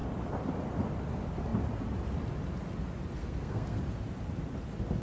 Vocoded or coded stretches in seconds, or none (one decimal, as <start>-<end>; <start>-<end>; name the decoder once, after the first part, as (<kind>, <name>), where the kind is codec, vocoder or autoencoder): 3.2-3.8 (codec, SNAC)